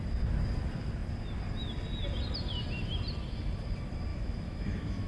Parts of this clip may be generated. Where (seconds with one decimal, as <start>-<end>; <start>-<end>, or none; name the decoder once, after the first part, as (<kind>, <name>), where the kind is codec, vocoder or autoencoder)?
4.1-5.1 (autoencoder, DAC-VAE)

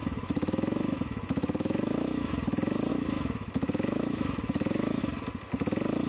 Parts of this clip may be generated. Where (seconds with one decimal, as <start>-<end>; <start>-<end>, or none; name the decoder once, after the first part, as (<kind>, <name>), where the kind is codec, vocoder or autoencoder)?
0.0-2.3 (autoencoder, DAC-VAE); 2.9-5.0